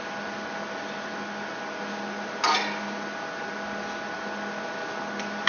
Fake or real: real